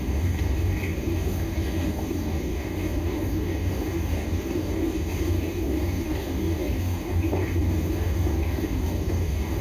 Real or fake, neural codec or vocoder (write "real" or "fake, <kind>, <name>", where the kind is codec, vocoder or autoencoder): fake, codec, DAC